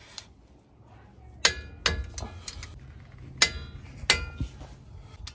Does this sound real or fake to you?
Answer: real